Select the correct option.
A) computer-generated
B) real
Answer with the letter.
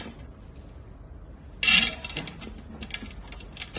B